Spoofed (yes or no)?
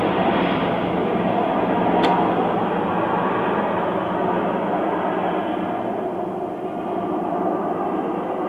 no